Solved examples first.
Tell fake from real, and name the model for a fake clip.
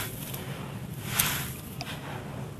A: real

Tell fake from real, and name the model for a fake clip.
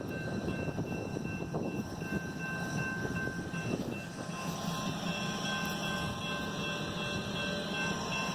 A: real